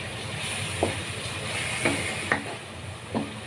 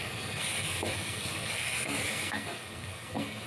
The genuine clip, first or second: first